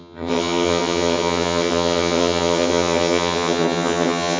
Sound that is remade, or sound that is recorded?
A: remade